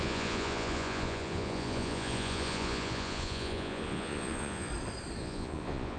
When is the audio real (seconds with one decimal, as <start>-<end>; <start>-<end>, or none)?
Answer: 4.7-5.2